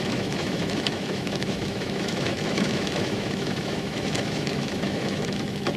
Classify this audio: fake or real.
fake